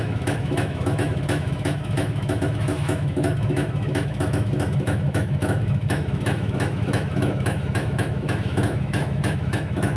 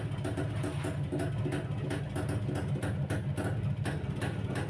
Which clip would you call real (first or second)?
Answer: second